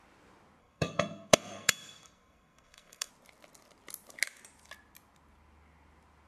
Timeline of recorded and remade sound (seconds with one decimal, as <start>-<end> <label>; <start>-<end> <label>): 0.0-0.6 recorded; 0.6-3.1 remade; 3.1-6.3 recorded